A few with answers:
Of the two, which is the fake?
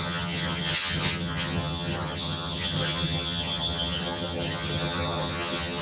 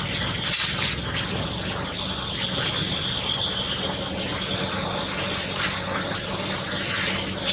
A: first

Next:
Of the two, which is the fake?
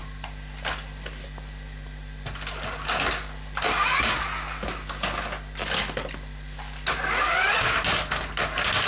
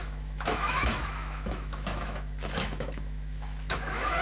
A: second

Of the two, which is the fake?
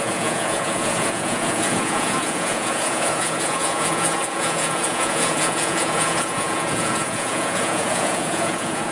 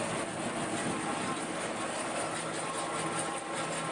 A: first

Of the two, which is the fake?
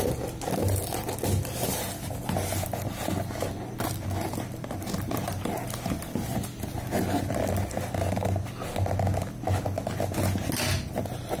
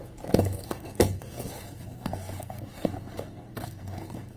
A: second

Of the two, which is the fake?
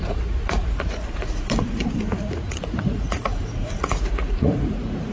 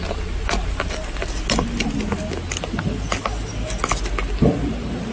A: first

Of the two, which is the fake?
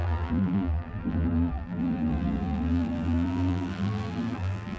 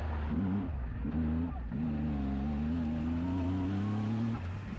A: first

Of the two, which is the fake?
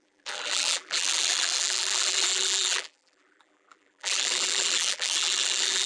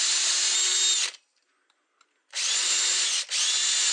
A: first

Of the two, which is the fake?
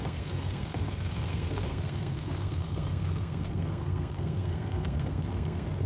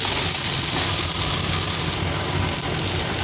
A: first